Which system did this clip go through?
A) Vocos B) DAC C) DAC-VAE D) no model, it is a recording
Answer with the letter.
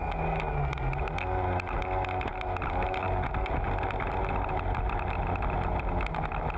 D